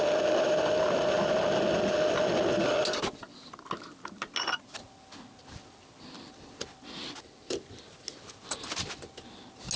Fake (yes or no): no